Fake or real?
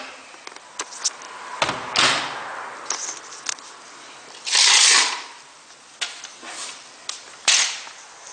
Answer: real